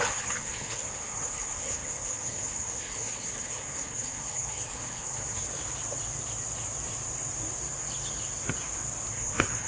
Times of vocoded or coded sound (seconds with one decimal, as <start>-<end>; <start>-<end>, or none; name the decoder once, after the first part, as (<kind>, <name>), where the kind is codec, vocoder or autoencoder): 0.0-5.5 (codec, HILCodec); 9.1-9.7